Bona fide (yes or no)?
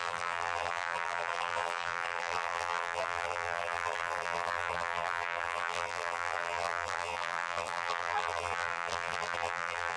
no